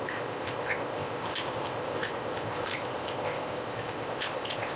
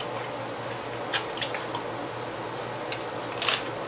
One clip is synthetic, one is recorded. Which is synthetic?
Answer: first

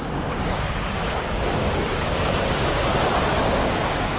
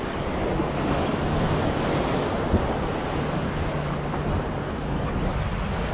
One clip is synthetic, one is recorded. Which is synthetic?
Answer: first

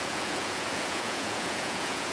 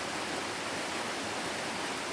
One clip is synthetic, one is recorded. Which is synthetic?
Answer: first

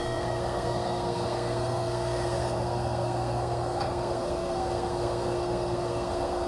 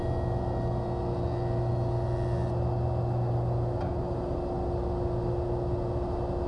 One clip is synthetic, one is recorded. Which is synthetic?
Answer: first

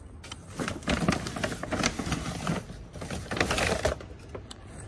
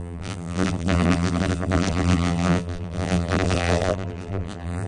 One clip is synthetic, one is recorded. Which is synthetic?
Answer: second